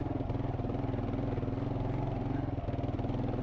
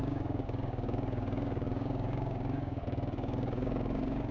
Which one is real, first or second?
first